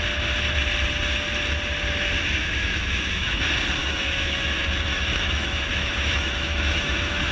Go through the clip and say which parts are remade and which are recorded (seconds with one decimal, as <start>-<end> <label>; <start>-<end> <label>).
0.0-2.4 recorded; 2.4-3.4 remade; 3.4-3.8 recorded; 3.8-7.3 remade